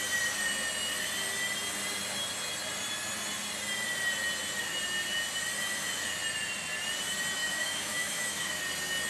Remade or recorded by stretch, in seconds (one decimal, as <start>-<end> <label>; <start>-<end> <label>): 0.0-7.4 recorded; 7.4-8.6 remade; 8.6-9.1 recorded